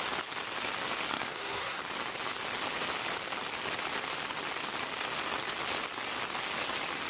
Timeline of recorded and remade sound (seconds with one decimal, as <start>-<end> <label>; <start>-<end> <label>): 0.0-1.1 recorded; 1.1-1.8 remade; 1.8-7.1 recorded